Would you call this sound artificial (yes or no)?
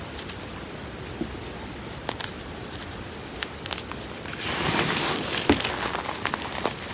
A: no